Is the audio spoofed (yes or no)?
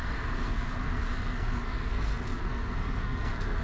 yes